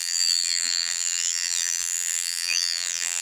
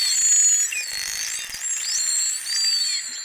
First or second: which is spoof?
first